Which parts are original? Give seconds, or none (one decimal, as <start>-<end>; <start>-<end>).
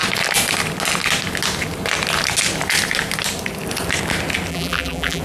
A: 0.0-4.5